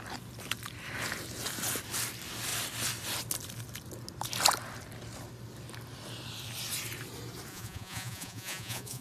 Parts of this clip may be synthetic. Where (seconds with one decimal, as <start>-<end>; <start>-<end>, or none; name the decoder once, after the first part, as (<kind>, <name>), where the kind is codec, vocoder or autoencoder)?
7.5-9.0 (vocoder, Vocos)